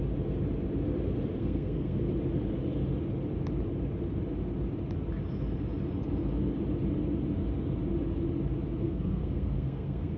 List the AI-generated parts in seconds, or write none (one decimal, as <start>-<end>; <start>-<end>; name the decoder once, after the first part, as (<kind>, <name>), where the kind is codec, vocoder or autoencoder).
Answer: 1.4-2.1 (codec, SNAC); 8.8-10.2